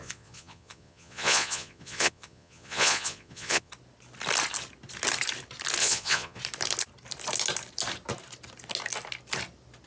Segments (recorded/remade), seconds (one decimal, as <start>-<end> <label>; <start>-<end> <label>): 0.0-3.7 remade; 3.7-5.8 recorded; 5.8-6.4 remade; 6.4-9.9 recorded

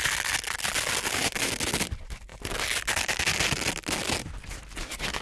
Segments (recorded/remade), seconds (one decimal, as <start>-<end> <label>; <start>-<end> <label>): 0.0-5.2 recorded